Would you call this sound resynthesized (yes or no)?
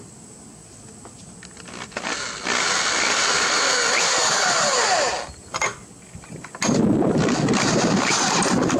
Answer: no